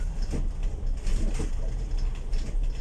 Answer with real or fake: real